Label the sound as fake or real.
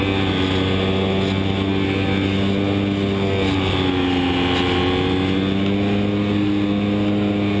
real